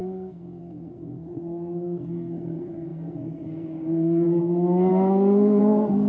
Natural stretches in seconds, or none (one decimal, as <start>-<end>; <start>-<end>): none